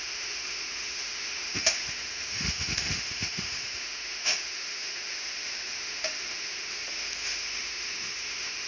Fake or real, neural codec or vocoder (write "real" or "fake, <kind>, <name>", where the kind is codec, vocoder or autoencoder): fake, autoencoder, DAC-VAE